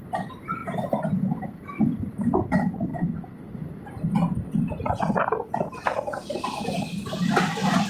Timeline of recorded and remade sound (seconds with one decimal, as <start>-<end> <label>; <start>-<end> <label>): 0.0-7.9 recorded